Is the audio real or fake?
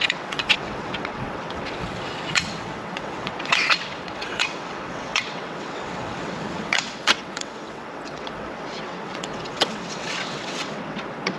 fake